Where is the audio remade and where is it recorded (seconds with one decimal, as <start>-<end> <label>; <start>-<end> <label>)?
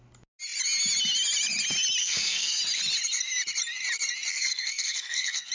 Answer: 0.0-2.0 recorded; 2.0-2.6 remade; 2.6-4.3 recorded; 4.3-5.5 remade